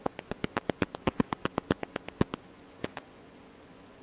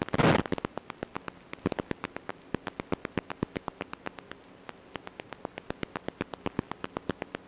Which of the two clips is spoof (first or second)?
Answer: first